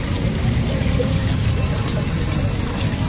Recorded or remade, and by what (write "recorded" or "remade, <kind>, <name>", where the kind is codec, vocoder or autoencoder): remade, vocoder, BigVGAN v2